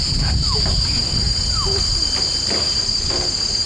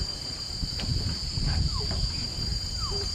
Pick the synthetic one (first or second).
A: second